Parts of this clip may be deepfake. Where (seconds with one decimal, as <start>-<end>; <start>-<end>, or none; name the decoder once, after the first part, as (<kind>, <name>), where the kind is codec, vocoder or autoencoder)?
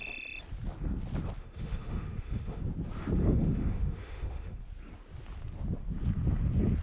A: 1.4-2.6 (autoencoder, DAC-VAE); 3.2-4.6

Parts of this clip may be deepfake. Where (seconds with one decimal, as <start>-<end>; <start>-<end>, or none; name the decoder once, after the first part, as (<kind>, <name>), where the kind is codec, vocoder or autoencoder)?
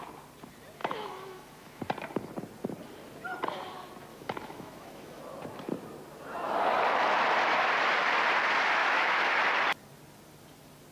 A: 0.8-1.8 (autoencoder, DAC-VAE); 4.1-5.2; 8.8-9.4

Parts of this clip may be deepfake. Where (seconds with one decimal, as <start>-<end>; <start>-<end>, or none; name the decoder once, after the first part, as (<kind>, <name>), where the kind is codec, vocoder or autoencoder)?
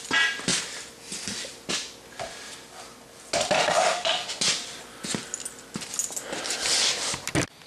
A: 3.6-4.4 (autoencoder, DAC-VAE)